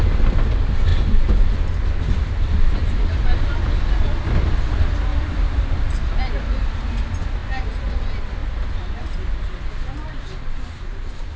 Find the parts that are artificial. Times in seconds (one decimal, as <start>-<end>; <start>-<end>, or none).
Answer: 5.1-6.2

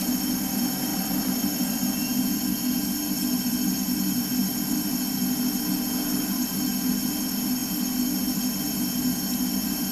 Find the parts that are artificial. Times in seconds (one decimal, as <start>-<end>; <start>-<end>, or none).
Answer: 0.9-1.8

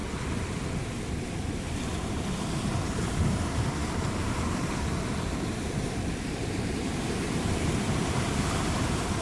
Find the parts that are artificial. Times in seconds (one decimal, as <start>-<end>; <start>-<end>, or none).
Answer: 2.5-9.2